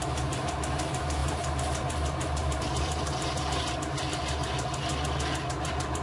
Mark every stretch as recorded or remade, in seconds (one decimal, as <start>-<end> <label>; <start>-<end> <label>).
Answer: 0.0-4.9 remade; 4.9-5.5 recorded; 5.5-6.0 remade